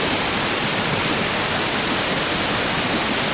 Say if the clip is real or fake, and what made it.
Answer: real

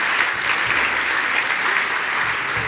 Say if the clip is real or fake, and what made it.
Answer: real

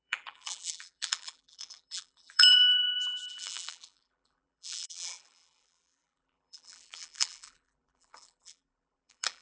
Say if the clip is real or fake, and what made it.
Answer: fake, vocoder, BigVGAN v2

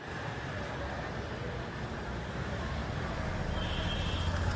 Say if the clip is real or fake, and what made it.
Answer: real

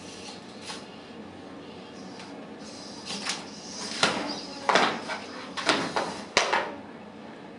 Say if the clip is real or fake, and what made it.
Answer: real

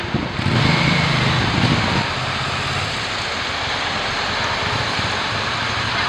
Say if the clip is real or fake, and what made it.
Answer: fake, vocoder, BigVGAN v2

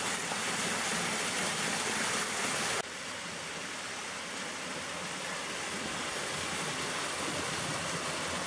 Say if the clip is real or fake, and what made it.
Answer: real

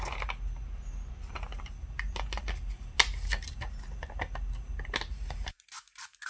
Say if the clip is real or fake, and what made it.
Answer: real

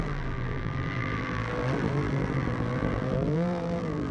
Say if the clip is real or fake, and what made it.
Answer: fake, vocoder, BigVGAN v2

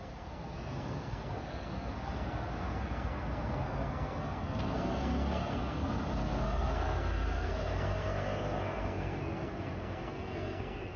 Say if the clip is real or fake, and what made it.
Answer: fake, codec, SNAC